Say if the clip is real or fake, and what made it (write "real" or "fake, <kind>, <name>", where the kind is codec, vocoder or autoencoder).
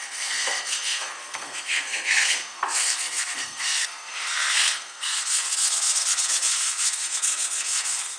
fake, codec, SNAC